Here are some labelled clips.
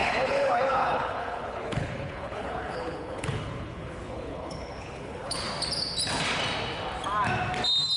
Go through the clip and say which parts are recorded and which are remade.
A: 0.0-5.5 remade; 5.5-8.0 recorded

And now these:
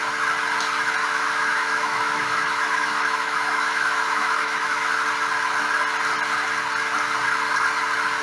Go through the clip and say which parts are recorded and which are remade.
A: 0.0-1.0 recorded; 1.0-4.9 remade; 4.9-8.2 recorded

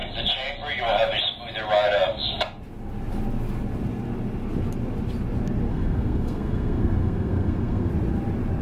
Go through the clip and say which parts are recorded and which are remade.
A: 0.0-5.7 recorded; 5.7-7.9 remade; 7.9-8.6 recorded

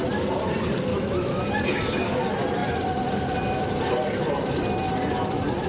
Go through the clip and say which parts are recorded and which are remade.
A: 0.0-0.9 recorded; 0.9-1.4 remade; 1.4-5.7 recorded

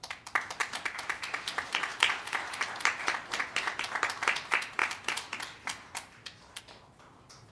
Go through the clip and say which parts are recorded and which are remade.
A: 0.0-0.6 remade; 0.6-1.5 recorded; 1.5-7.5 remade

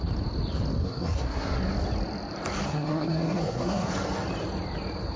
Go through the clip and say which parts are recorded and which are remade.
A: 0.0-0.8 recorded; 0.8-1.6 remade; 1.6-2.7 recorded; 2.7-3.9 remade; 3.9-5.2 recorded

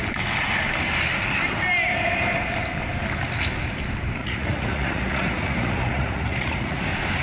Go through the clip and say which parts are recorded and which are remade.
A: 0.0-4.2 recorded; 4.2-6.8 remade; 6.8-7.2 recorded

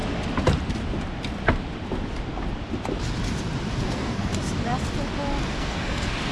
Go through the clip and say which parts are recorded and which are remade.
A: 0.0-3.8 recorded; 3.8-4.3 remade; 4.3-5.5 recorded; 5.5-6.3 remade